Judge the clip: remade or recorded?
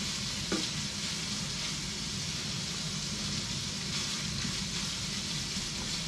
recorded